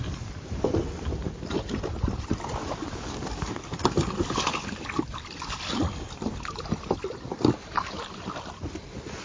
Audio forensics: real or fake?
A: real